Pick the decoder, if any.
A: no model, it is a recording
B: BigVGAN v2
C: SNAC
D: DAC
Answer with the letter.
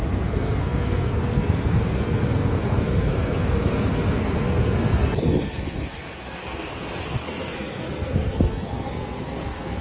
C